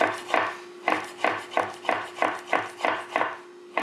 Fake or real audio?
real